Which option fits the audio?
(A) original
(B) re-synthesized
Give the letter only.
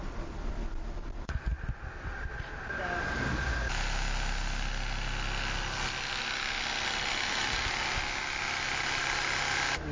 A